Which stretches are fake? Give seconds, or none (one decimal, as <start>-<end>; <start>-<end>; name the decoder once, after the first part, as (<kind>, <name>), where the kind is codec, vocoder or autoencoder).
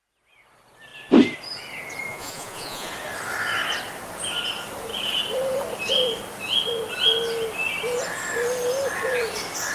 2.1-2.9 (vocoder, Vocos)